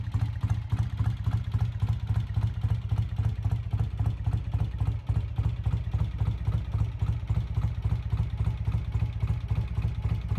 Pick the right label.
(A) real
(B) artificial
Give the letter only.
A